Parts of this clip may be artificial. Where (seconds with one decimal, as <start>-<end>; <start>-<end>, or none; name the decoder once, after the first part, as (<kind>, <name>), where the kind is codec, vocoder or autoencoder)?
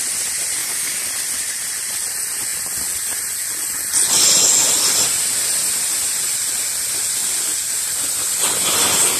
0.6-1.1 (codec, DAC)